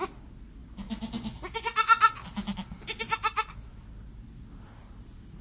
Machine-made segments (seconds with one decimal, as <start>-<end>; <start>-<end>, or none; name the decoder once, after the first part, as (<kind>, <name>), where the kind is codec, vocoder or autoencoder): none